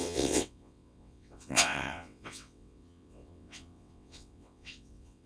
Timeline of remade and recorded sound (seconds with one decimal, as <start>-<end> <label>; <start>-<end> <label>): 0.0-5.3 remade